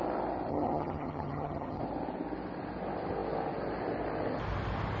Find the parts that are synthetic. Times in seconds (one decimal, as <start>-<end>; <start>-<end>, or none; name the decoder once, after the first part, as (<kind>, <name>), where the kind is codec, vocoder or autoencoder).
0.5-1.8 (vocoder, HiFi-GAN)